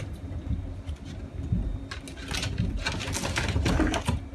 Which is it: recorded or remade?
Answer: recorded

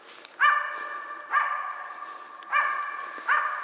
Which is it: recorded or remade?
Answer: recorded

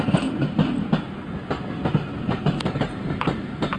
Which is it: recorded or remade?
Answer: recorded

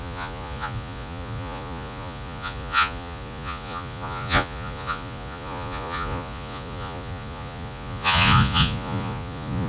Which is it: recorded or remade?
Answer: remade